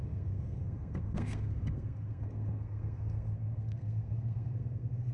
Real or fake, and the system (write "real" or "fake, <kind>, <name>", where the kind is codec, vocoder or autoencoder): fake, codec, SNAC